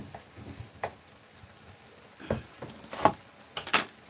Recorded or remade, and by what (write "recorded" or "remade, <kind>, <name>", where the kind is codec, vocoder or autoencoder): recorded